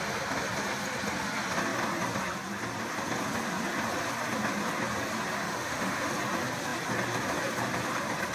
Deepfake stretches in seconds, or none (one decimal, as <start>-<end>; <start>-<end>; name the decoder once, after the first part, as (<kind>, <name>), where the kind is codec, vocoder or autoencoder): 5.4-6.1 (autoencoder, DAC-VAE)